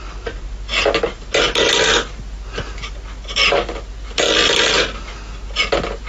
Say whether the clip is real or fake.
real